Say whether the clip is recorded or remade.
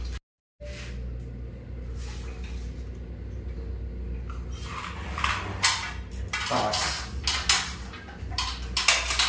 recorded